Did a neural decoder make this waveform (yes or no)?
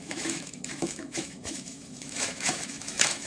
yes